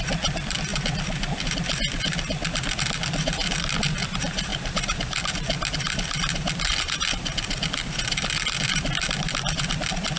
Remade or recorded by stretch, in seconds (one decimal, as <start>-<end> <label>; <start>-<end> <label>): 0.0-10.2 remade